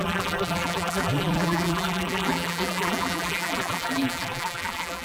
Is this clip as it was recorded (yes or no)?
no